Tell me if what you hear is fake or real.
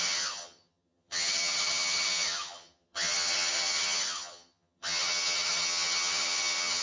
fake